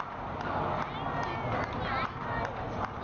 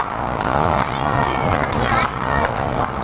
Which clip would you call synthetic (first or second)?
second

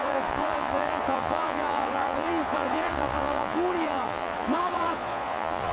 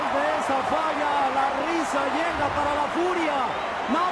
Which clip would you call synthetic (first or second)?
first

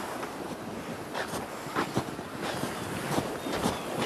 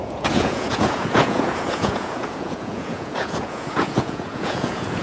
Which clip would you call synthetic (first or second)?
second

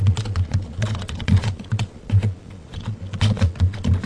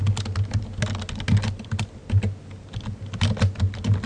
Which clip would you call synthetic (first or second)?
first